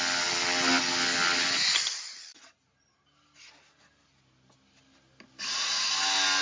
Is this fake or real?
real